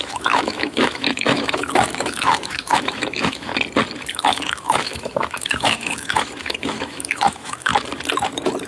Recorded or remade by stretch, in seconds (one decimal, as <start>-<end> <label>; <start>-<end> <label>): 0.0-3.5 remade; 3.5-4.1 recorded; 4.1-7.7 remade; 7.7-8.7 recorded